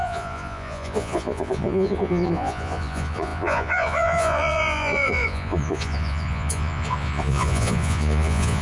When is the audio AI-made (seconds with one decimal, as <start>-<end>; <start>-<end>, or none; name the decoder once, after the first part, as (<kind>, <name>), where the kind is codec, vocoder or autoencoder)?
0.0-8.6 (vocoder, Vocos)